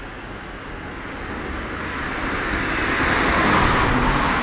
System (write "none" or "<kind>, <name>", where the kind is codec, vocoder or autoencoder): none